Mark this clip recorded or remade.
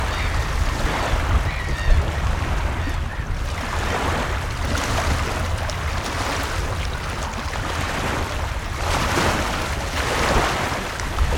recorded